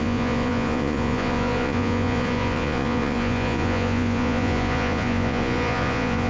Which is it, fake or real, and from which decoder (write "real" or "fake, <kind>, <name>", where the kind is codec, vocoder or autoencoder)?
fake, vocoder, Vocos